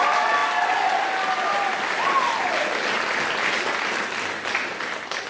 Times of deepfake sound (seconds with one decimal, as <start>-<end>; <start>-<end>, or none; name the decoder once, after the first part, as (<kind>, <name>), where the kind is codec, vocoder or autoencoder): none